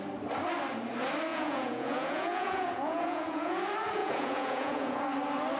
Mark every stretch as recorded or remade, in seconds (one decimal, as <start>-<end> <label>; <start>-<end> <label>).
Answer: 0.0-1.3 recorded; 1.3-3.6 remade; 3.6-4.0 recorded; 4.0-5.0 remade; 5.0-5.6 recorded

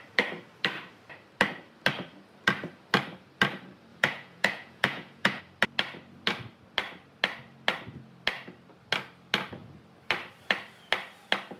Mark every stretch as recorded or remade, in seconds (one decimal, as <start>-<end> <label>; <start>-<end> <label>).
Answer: 0.0-3.9 recorded; 3.9-5.4 remade; 5.4-11.6 recorded

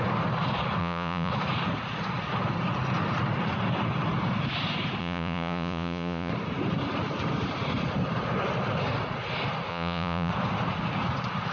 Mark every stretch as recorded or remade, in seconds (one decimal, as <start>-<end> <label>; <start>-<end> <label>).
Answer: 0.0-0.8 recorded; 0.8-1.3 remade; 1.3-5.0 recorded; 5.0-6.3 remade; 6.3-9.7 recorded; 9.7-10.3 remade; 10.3-11.5 recorded